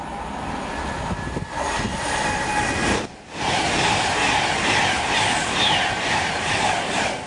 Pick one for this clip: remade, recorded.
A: recorded